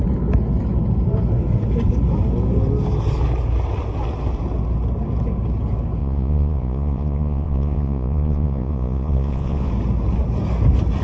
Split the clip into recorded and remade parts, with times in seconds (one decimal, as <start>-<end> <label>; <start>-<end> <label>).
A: 0.0-6.0 recorded; 6.0-9.7 remade; 9.7-11.0 recorded